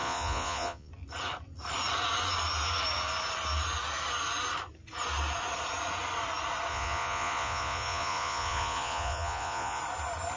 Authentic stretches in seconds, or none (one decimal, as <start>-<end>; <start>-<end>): 0.9-6.7; 9.8-10.4